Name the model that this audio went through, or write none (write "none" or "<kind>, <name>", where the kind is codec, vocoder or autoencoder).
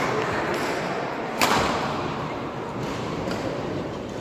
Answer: vocoder, BigVGAN v2